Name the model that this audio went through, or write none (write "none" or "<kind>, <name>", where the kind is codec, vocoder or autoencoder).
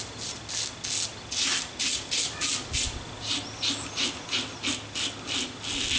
none